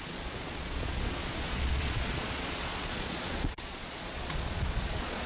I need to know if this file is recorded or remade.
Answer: remade